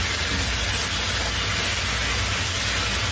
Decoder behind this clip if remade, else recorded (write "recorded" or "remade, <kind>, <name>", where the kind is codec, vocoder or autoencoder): recorded